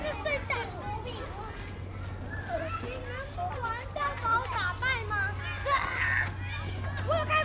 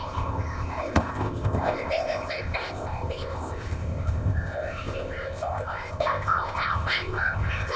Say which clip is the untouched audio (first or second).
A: first